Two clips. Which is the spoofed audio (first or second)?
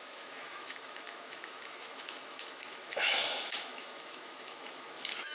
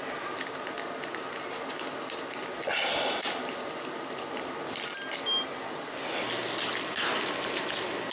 first